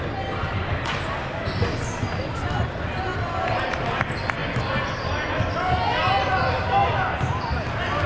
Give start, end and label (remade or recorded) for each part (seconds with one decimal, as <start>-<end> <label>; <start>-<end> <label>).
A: 0.0-8.1 recorded

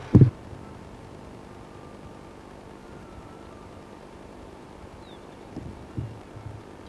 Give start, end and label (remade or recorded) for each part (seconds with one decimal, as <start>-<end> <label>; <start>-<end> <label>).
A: 0.0-2.8 recorded; 2.8-5.9 remade; 5.9-6.9 recorded

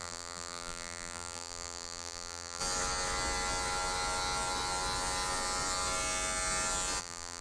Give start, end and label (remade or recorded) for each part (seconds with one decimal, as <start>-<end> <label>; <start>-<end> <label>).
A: 0.0-2.6 remade; 2.6-7.0 recorded; 7.0-7.4 remade